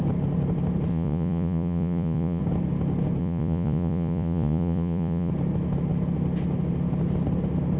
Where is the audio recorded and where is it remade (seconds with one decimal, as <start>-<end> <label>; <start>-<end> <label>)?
0.0-0.9 recorded; 0.9-2.4 remade; 2.4-3.2 recorded; 3.2-5.3 remade; 5.3-7.8 recorded